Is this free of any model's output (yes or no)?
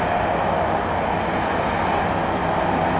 yes